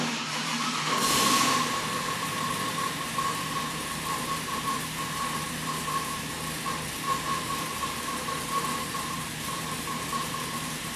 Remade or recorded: remade